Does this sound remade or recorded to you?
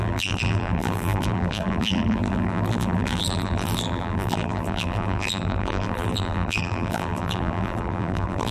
remade